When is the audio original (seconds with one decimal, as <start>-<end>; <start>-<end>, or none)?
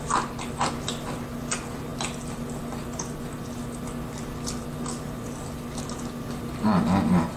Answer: 0.0-7.4